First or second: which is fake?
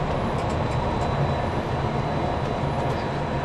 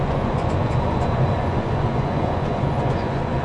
second